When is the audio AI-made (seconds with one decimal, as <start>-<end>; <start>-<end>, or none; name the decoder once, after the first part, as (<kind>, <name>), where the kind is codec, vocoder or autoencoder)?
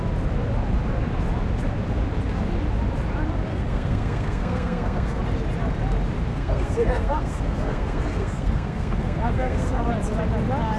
3.5-5.2 (codec, SNAC); 6.3-9.9